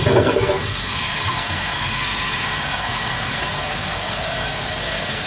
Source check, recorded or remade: remade